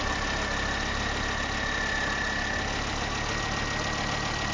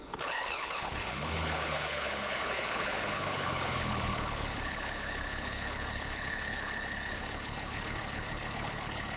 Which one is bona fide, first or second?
first